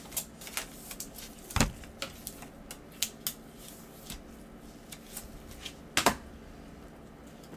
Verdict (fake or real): real